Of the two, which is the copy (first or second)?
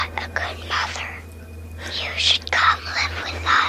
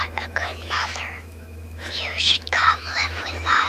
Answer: second